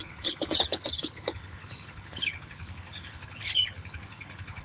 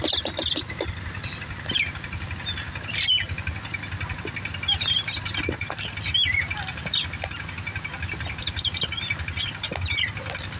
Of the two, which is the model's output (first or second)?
first